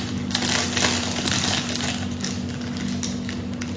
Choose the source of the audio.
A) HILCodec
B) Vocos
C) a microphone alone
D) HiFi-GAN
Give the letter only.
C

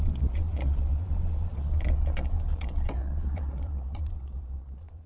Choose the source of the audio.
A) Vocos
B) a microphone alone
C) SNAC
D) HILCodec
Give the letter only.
A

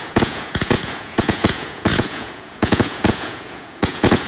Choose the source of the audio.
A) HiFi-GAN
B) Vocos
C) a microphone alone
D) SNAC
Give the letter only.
B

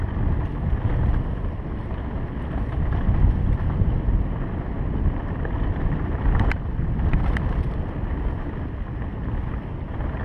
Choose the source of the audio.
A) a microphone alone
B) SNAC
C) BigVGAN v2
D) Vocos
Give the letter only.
A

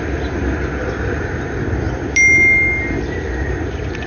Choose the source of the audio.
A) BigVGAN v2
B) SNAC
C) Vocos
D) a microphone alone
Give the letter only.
D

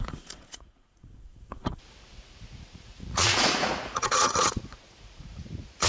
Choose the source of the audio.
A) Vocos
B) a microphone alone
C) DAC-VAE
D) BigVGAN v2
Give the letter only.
A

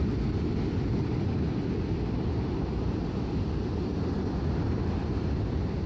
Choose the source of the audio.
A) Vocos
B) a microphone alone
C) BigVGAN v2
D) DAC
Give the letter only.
B